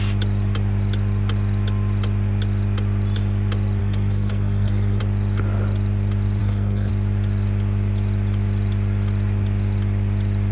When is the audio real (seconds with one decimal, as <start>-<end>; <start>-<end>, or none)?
0.0-3.8; 5.0-6.4; 6.9-10.5

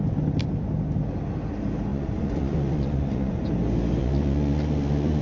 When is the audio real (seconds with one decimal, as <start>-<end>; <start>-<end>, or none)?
0.0-1.9; 3.4-4.0